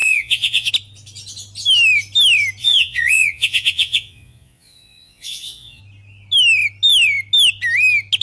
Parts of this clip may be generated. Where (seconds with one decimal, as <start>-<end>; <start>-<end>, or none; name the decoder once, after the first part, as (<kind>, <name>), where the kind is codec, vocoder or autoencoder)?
0.0-0.7 (vocoder, Vocos); 2.6-5.8